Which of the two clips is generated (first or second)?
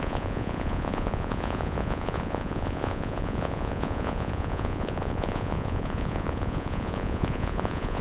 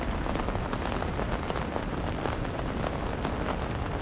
first